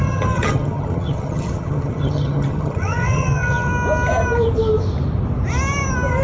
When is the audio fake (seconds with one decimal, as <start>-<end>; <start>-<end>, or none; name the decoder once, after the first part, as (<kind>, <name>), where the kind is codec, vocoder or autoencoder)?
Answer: 0.0-3.7 (vocoder, HiFi-GAN)

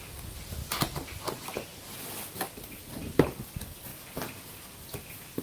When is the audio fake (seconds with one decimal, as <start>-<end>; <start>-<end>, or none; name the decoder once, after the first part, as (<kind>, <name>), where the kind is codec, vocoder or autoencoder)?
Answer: none

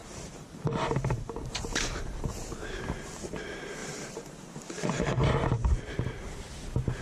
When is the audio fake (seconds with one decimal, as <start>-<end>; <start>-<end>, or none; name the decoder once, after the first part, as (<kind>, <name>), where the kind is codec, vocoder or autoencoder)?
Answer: 0.0-2.5 (vocoder, BigVGAN v2); 3.8-5.3

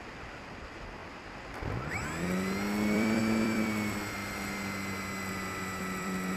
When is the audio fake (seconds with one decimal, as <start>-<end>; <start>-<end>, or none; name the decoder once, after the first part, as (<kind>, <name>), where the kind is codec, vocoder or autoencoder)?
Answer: 0.0-6.4 (vocoder, BigVGAN v2)

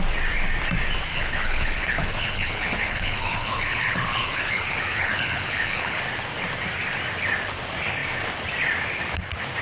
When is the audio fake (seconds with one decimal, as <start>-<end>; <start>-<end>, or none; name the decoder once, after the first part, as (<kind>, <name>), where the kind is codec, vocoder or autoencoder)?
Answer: 1.1-6.0 (codec, HILCodec)

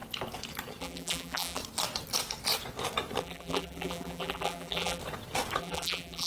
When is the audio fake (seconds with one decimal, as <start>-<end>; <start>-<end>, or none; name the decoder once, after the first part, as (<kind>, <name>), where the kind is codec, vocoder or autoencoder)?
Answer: 0.8-1.6 (vocoder, BigVGAN v2); 3.2-5.0; 5.6-6.3

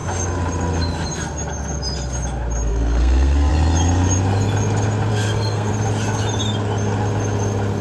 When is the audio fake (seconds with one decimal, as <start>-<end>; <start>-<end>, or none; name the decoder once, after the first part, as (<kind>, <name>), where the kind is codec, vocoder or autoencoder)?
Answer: 2.7-3.5 (codec, SNAC); 5.1-5.7